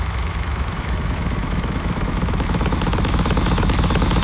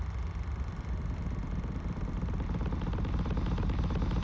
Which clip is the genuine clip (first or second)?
second